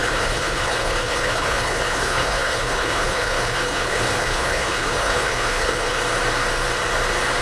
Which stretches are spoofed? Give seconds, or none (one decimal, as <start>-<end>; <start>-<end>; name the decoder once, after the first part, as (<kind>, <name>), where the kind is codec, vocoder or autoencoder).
0.0-6.0 (codec, HILCodec)